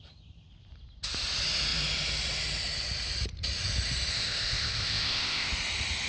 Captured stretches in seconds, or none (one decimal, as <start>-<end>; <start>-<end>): 0.0-4.1; 5.5-6.1